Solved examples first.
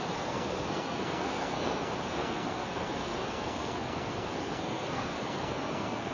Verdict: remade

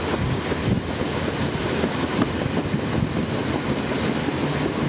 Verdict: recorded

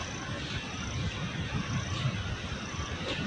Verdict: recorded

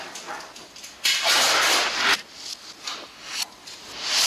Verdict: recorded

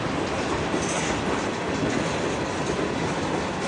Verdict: recorded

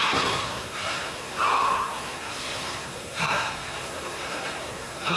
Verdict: remade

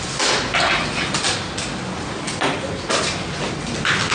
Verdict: recorded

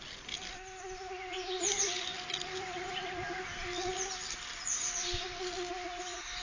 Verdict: recorded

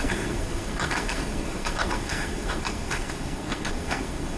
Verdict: remade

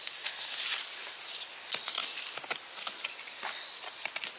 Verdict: recorded